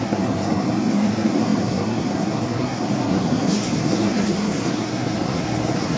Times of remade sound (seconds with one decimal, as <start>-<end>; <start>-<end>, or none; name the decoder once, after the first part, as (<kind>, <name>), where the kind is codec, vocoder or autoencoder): 0.0-6.0 (codec, SNAC)